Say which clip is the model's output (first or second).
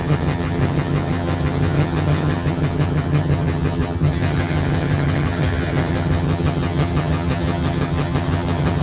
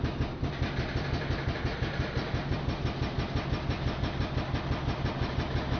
first